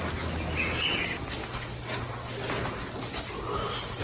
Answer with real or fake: real